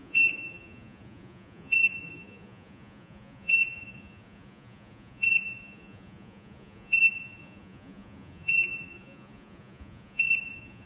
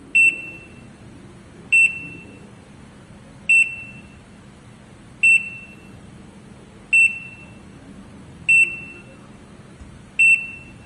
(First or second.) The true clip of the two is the second